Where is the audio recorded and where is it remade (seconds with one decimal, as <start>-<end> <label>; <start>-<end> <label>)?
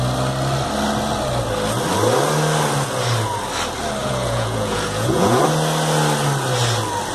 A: 0.0-4.0 recorded; 4.0-5.4 remade; 5.4-7.1 recorded